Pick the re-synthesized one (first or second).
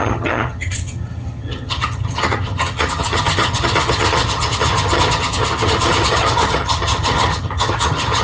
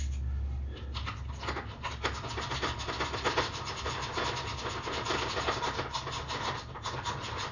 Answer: first